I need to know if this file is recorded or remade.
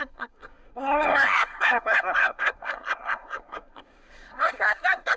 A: remade